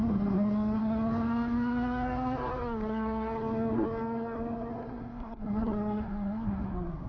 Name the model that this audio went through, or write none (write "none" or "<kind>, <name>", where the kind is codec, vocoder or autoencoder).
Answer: codec, SNAC